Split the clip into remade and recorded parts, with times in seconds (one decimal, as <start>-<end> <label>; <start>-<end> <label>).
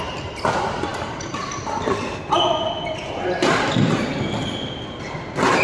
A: 0.0-5.6 recorded